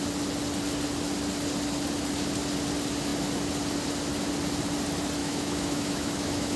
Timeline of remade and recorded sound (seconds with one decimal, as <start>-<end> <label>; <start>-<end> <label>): 0.0-5.2 recorded; 5.2-6.6 remade